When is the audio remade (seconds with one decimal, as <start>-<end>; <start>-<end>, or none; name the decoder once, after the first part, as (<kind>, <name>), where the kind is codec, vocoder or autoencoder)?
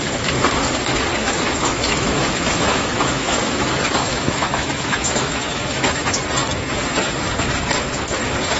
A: 1.2-6.1 (autoencoder, DAC-VAE)